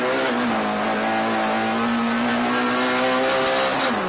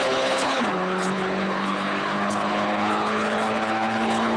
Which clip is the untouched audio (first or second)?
first